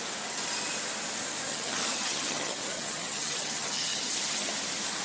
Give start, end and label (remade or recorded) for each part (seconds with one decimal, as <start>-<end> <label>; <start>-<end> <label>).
0.0-1.5 recorded; 1.5-4.5 remade; 4.5-5.0 recorded